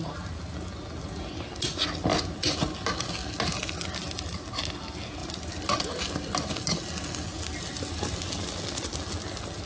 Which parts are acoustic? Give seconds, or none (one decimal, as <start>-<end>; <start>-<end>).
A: 0.0-9.7